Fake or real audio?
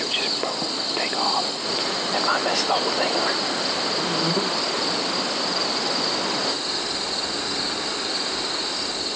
real